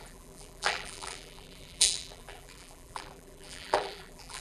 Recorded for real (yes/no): no